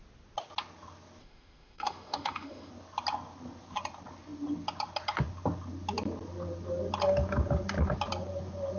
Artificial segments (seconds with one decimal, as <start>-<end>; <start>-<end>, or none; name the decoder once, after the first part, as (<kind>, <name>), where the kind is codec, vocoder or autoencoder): 1.2-2.7 (autoencoder, DAC-VAE)